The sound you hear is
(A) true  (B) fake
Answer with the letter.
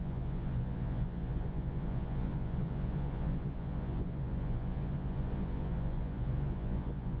B